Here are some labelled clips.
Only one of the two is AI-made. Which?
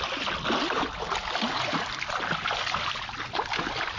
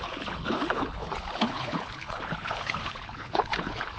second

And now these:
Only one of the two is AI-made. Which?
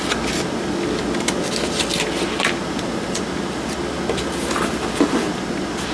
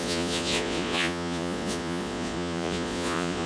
second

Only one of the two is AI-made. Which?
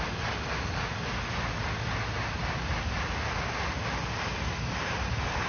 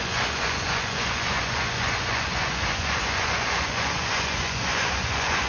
second